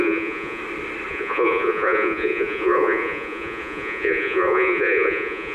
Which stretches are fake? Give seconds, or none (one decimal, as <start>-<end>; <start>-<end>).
0.0-0.6; 1.1-5.5